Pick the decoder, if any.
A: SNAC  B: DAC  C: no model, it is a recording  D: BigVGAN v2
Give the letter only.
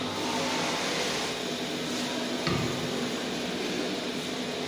C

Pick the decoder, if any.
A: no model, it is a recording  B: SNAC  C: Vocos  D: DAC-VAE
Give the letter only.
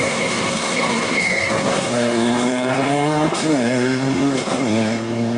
B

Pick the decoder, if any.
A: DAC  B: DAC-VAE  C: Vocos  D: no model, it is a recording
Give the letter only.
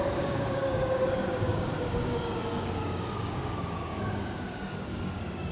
A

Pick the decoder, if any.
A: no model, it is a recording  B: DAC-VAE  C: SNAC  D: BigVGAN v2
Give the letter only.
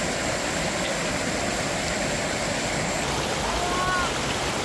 A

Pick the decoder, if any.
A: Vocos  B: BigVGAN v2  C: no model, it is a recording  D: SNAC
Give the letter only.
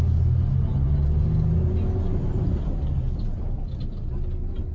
C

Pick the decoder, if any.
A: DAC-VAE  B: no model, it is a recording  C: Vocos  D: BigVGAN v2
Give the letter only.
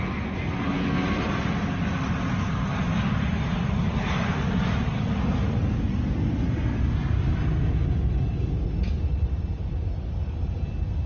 B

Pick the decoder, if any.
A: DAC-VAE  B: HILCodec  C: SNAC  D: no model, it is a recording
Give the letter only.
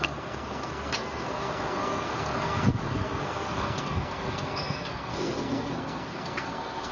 C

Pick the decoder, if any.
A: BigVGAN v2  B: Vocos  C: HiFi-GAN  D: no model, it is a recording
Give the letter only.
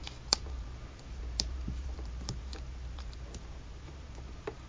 A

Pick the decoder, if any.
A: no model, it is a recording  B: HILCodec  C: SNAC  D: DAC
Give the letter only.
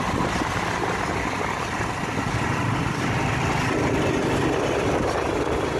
A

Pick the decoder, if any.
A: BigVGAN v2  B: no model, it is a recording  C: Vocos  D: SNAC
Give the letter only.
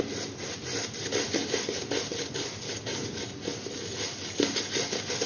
B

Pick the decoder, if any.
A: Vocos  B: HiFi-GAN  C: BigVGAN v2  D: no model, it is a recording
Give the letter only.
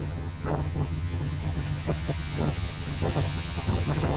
B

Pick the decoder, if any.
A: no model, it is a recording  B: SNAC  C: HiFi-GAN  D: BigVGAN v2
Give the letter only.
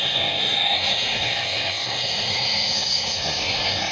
B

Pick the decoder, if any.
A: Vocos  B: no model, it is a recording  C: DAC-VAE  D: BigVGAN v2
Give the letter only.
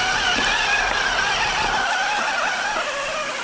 B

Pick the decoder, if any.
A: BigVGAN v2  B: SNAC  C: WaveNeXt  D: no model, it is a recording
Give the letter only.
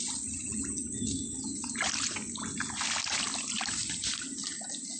D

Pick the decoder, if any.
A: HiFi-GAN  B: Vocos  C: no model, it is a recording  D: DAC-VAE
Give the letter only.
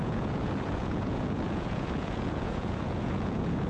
B